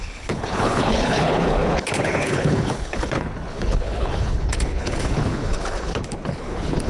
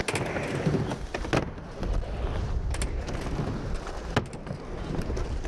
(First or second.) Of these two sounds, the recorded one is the second